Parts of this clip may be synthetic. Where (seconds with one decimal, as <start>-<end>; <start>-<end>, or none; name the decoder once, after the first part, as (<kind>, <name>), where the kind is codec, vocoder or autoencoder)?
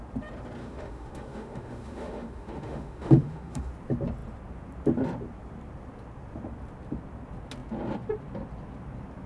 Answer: 0.6-3.7 (autoencoder, DAC-VAE)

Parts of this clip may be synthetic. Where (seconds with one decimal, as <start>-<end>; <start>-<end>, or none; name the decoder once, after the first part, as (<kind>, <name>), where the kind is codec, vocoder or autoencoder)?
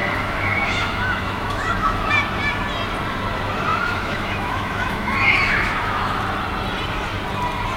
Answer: 0.0-2.1 (autoencoder, DAC-VAE); 3.7-6.2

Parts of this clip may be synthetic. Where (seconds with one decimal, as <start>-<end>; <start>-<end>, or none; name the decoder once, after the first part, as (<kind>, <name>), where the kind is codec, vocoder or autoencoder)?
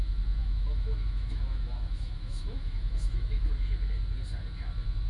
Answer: 0.4-3.5 (autoencoder, DAC-VAE)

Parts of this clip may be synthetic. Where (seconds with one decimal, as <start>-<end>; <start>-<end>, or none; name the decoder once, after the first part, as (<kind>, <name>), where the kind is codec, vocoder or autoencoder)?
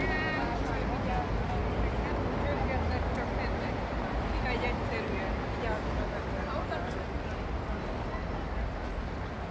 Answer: none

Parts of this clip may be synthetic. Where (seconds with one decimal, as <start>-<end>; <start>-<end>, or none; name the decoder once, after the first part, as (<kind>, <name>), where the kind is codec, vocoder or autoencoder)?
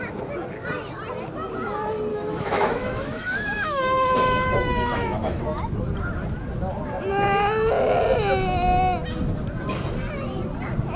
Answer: 2.1-5.4 (autoencoder, DAC-VAE)